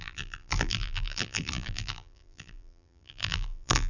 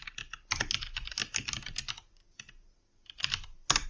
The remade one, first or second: first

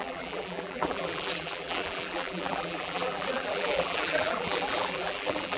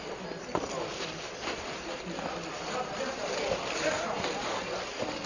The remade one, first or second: first